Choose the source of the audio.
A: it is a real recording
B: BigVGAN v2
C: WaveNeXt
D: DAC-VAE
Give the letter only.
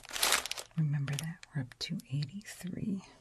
A